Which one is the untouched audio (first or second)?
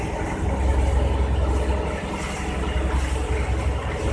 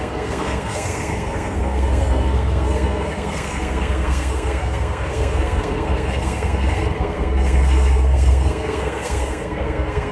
first